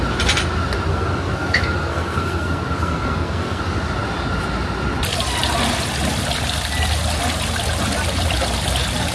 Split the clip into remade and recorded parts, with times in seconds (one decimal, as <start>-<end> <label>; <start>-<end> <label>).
0.0-0.9 recorded; 0.9-3.6 remade; 3.6-9.1 recorded